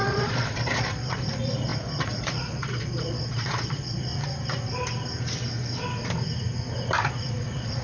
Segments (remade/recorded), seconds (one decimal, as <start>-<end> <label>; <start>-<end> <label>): 0.0-4.1 remade; 4.1-7.0 recorded; 7.0-7.8 remade